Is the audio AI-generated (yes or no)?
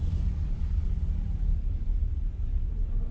yes